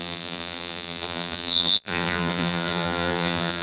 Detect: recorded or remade remade